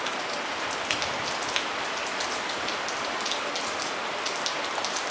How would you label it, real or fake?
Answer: real